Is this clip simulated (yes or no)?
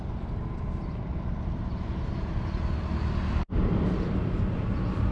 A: no